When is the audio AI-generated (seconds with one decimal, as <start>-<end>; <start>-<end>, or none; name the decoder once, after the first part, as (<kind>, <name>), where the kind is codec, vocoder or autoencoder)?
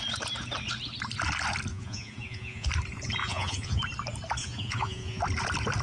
1.7-2.7 (vocoder, Vocos); 3.2-3.8; 4.4-5.2